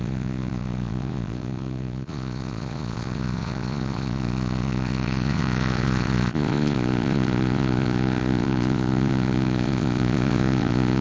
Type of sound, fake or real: fake